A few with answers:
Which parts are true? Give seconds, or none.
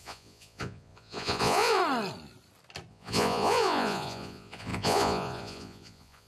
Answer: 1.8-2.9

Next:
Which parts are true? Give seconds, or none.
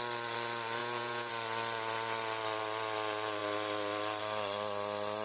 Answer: 0.0-0.8; 1.3-5.2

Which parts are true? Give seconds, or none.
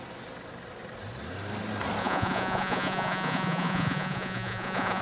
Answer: 0.0-2.0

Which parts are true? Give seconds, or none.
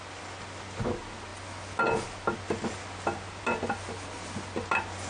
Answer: 0.0-5.1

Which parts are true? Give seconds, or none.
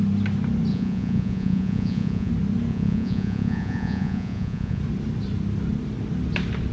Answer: 0.0-0.7; 2.3-2.7; 4.8-6.7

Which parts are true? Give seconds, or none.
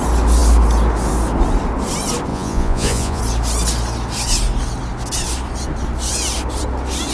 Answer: 0.0-2.3; 3.2-7.1